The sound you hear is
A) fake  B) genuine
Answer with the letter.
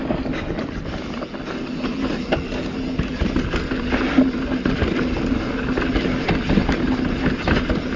B